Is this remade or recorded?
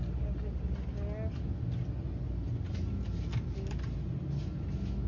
recorded